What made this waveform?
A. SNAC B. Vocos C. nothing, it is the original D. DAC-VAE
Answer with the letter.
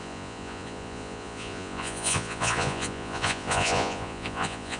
B